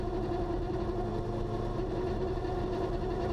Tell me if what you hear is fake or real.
real